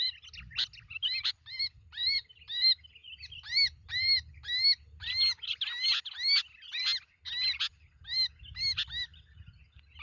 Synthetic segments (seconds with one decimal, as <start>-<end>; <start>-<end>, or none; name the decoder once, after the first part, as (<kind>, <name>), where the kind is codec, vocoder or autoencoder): none